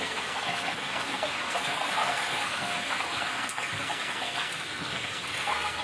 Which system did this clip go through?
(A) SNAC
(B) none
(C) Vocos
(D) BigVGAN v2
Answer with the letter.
A